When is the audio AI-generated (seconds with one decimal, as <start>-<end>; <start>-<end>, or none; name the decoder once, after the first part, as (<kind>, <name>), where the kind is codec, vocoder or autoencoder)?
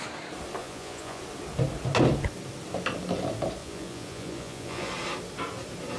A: 0.6-1.2 (vocoder, Vocos); 3.6-4.9